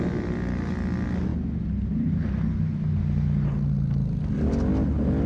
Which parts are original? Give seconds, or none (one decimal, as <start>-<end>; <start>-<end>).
0.0-5.3